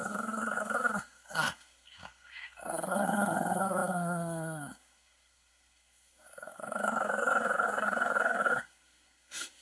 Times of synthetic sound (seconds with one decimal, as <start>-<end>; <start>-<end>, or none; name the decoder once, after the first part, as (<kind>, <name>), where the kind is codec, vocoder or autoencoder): 0.0-9.6 (codec, SNAC)